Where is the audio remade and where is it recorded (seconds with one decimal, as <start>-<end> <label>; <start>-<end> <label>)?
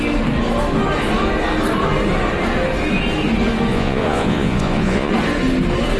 0.0-3.7 recorded; 3.7-5.1 remade; 5.1-6.0 recorded